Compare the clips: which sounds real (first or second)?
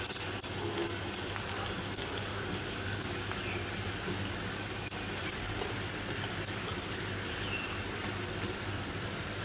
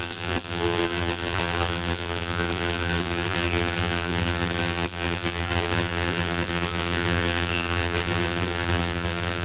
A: first